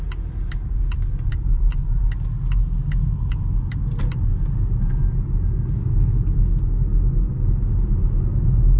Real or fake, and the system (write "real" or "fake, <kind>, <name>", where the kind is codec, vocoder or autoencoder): real